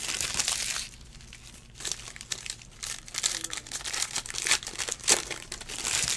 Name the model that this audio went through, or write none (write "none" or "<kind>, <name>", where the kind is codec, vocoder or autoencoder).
none